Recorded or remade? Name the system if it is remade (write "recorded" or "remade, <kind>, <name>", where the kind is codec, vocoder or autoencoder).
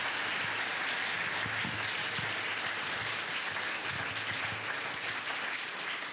recorded